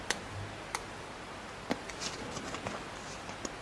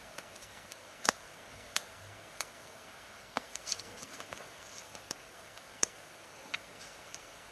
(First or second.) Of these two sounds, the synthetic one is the second